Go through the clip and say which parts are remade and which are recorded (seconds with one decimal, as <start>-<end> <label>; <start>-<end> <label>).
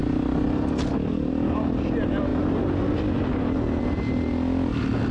0.0-5.1 recorded